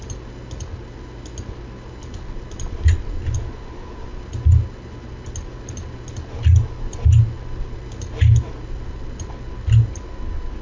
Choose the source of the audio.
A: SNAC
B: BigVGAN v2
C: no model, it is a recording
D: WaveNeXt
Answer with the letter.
C